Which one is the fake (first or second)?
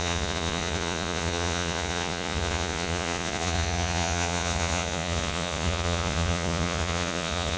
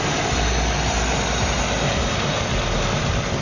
first